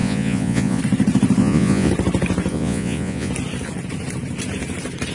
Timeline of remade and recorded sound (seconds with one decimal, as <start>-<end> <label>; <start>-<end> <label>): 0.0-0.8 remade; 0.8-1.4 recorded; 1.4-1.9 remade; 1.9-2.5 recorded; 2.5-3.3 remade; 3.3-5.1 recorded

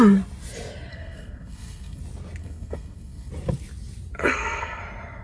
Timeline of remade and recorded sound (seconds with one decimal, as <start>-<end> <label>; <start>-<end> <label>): 0.0-0.9 recorded; 0.9-2.0 remade; 2.0-2.4 recorded; 2.4-3.3 remade; 3.3-4.2 recorded; 4.2-4.8 remade; 4.8-5.2 recorded

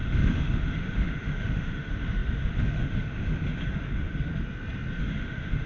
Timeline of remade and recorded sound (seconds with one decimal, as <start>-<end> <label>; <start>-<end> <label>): 0.0-4.3 remade; 4.3-5.0 recorded; 5.0-5.7 remade

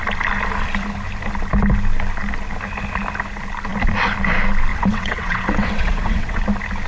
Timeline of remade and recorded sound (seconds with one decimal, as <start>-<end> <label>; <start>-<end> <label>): 0.0-4.7 recorded; 4.7-6.4 remade; 6.4-6.9 recorded

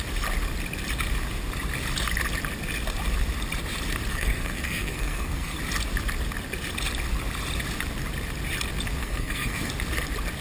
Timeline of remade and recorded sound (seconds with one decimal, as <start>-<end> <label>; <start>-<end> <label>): 0.0-4.1 recorded; 4.1-5.6 remade; 5.6-9.0 recorded; 9.0-9.7 remade; 9.7-10.4 recorded